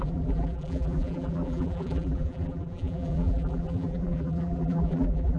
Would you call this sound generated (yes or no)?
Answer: yes